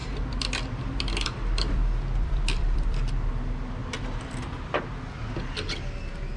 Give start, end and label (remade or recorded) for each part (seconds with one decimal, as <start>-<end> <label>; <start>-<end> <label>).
0.0-3.3 remade; 3.3-3.8 recorded; 3.8-4.8 remade; 4.8-6.4 recorded